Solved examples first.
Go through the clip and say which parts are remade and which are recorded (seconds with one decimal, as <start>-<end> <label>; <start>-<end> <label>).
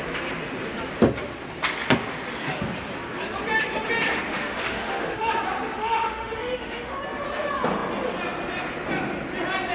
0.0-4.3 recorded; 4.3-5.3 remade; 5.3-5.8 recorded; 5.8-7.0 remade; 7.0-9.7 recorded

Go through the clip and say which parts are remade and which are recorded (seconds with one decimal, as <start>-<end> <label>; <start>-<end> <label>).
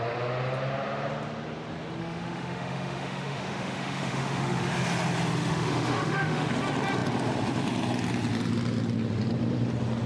0.0-2.0 recorded; 2.0-4.7 remade; 4.7-5.4 recorded; 5.4-6.5 remade; 6.5-10.1 recorded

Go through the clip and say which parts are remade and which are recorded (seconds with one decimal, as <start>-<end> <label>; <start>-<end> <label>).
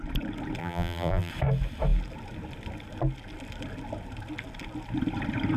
0.0-0.6 recorded; 0.6-1.3 remade; 1.3-5.6 recorded